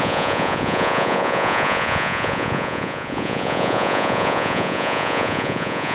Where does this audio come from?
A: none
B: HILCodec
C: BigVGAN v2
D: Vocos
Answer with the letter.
D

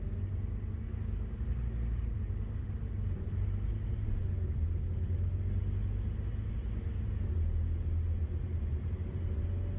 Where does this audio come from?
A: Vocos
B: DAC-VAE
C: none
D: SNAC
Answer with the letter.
C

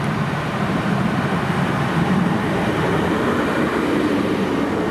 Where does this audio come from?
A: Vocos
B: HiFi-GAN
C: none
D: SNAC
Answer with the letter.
C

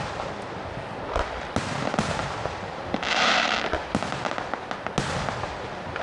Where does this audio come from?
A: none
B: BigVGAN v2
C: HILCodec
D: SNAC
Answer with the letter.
A